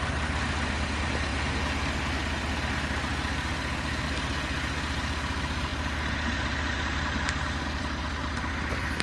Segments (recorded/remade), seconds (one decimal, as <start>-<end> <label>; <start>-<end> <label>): 0.0-9.0 recorded